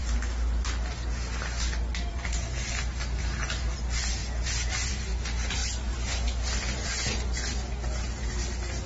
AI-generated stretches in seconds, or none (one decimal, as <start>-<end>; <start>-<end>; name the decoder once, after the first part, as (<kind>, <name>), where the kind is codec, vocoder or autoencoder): none